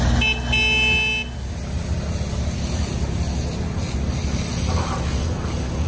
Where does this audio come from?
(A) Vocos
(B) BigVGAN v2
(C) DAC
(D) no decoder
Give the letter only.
D